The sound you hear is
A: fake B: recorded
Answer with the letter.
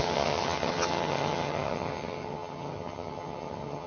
A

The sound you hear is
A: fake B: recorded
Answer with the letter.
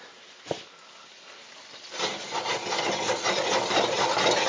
B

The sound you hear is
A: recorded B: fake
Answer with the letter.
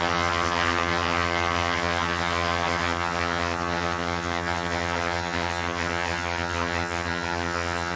B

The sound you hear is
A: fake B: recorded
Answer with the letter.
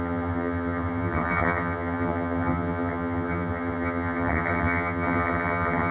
A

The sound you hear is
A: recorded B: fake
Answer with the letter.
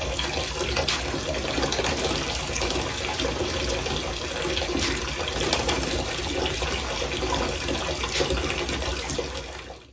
A